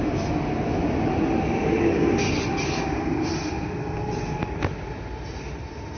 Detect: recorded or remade recorded